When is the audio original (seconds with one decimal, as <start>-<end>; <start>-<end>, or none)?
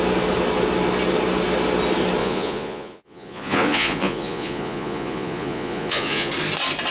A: 0.0-2.2; 6.3-6.9